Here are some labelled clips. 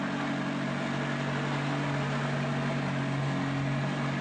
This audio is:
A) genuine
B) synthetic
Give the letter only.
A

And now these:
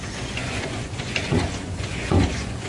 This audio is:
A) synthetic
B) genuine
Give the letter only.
A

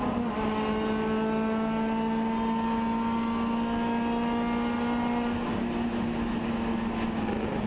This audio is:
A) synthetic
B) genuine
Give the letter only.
B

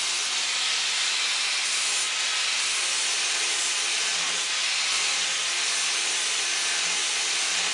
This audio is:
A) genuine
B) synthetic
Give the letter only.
A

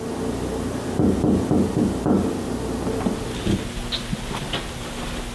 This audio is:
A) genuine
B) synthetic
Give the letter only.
A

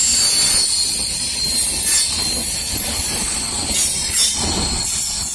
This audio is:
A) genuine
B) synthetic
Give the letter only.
A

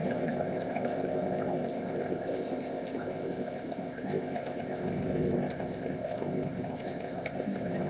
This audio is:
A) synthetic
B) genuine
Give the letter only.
A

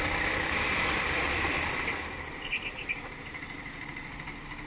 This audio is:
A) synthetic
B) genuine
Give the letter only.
A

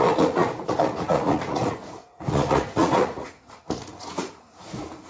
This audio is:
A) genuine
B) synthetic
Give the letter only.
B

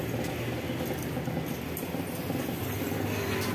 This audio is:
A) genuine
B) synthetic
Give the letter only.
A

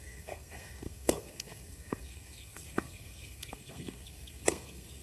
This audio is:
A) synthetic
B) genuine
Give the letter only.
A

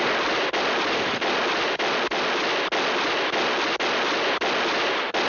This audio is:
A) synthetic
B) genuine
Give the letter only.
B